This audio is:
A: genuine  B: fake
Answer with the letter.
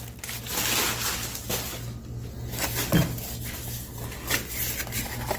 A